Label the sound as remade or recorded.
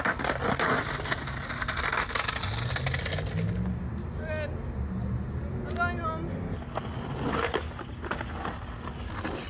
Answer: recorded